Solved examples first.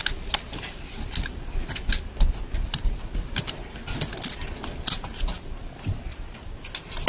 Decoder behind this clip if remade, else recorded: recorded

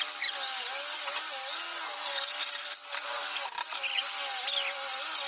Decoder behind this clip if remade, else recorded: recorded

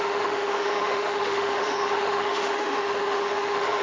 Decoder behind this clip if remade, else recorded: remade, autoencoder, DAC-VAE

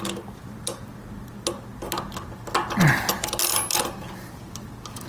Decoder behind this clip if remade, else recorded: recorded